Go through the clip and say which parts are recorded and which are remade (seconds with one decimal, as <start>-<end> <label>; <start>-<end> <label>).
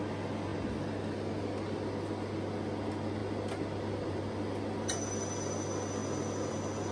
0.0-6.9 recorded